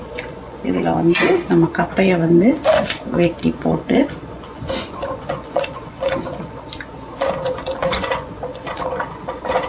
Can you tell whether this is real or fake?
fake